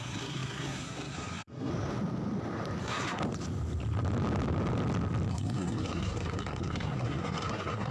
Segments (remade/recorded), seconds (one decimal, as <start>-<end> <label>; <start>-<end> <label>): 0.0-1.7 remade; 1.7-2.8 recorded; 2.8-3.2 remade; 3.2-5.3 recorded; 5.3-7.9 remade